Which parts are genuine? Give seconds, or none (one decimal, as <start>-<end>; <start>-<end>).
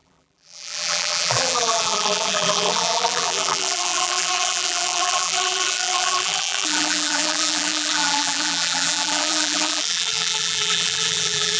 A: none